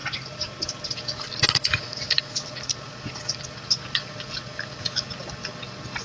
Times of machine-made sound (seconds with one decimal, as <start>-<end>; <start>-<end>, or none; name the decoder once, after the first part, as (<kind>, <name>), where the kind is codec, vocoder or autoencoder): none